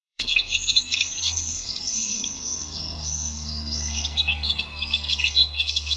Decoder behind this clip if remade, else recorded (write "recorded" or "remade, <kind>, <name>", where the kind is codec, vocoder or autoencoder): remade, codec, SNAC